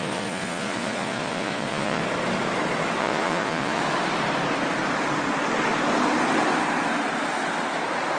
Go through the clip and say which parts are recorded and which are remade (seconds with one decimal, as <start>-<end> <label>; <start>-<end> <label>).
0.0-2.0 remade; 2.0-3.0 recorded; 3.0-3.8 remade; 3.8-8.2 recorded